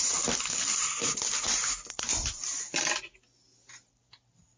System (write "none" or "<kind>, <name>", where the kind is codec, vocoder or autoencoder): none